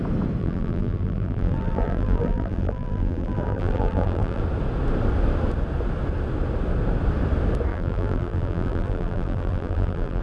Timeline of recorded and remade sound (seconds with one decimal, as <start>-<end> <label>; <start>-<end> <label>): 0.0-0.4 recorded; 0.4-4.4 remade; 4.4-7.7 recorded; 7.7-10.2 remade